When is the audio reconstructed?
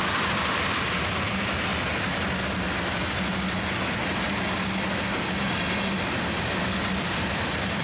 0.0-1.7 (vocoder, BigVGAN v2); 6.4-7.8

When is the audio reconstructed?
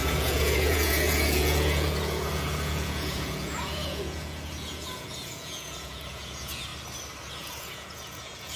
0.0-6.7 (vocoder, Vocos); 7.3-8.6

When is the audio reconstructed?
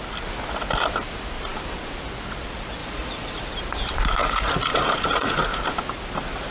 2.8-3.4 (vocoder, Vocos); 4.2-5.4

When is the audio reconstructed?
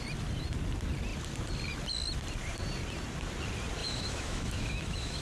3.8-5.2 (autoencoder, DAC-VAE)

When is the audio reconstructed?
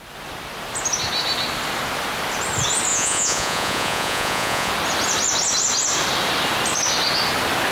2.9-4.7 (vocoder, Vocos)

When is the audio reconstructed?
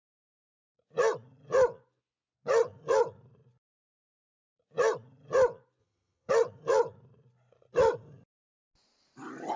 5.8-6.3 (vocoder, HiFi-GAN)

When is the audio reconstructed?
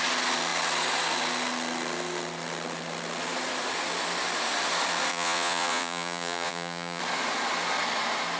5.1-7.0 (vocoder, Vocos)